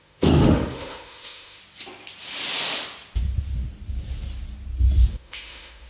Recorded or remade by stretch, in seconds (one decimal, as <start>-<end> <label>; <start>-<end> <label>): 0.0-1.6 remade; 1.6-5.1 recorded; 5.1-5.9 remade